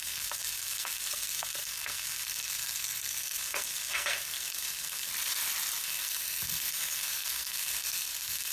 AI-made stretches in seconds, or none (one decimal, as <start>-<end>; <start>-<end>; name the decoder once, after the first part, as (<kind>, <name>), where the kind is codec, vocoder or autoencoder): 0.0-5.1 (codec, SNAC); 5.8-8.5